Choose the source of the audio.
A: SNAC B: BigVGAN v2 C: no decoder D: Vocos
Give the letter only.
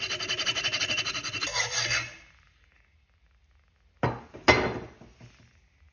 C